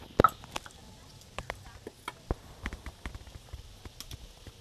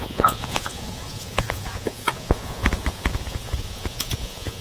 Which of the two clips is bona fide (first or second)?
first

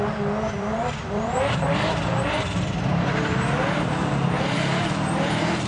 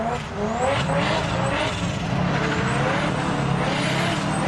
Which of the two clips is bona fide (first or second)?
second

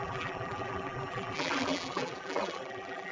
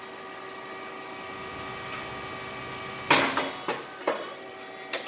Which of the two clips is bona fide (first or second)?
second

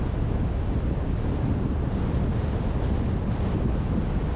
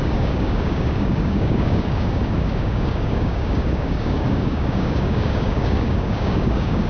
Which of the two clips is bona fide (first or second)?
first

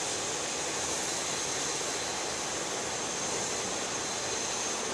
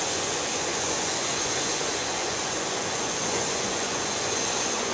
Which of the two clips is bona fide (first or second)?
first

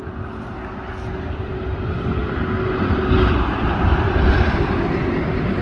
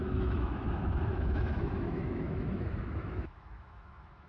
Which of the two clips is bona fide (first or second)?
first